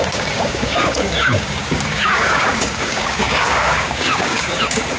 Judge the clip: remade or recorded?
remade